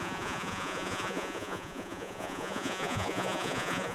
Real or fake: fake